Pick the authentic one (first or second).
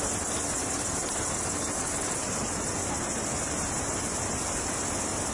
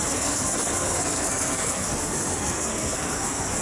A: first